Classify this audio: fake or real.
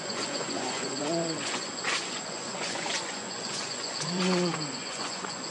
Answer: fake